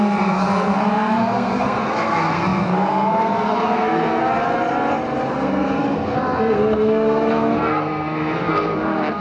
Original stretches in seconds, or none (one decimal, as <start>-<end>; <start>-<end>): 4.2-5.3